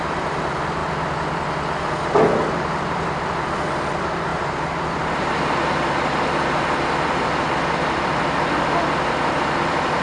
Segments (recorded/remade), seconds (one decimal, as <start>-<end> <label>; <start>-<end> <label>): 0.0-0.8 remade; 0.8-3.2 recorded; 3.2-10.0 remade